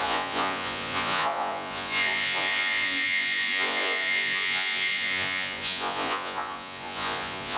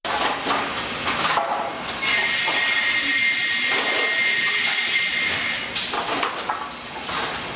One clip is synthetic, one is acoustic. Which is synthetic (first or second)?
first